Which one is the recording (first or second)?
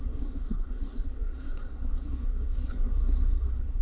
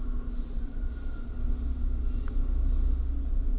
second